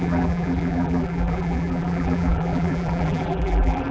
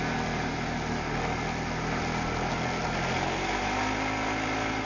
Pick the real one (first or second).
second